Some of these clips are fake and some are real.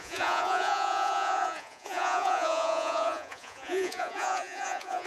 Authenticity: fake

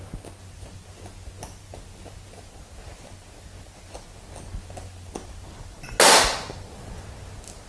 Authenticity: real